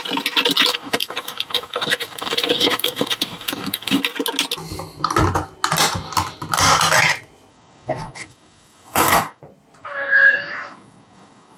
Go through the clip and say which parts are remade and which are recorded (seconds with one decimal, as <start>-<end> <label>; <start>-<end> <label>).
0.0-0.7 recorded; 0.7-4.0 remade; 4.0-7.5 recorded; 7.5-9.4 remade; 9.4-9.8 recorded; 9.8-11.6 remade